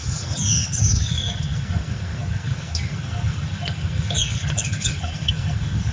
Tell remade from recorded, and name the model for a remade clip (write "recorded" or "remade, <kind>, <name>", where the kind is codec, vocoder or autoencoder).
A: remade, codec, SNAC